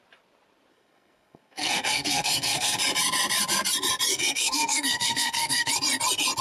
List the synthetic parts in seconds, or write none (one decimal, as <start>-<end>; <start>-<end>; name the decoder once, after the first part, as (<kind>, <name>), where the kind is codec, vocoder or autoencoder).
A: 0.7-2.8 (codec, SNAC); 4.1-5.7